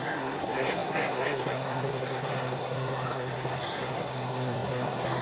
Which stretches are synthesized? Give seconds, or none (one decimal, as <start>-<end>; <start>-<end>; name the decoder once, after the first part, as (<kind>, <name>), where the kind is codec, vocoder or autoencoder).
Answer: 0.0-5.2 (codec, SNAC)